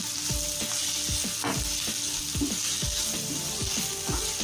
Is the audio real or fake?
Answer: real